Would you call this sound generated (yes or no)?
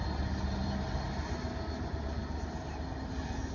no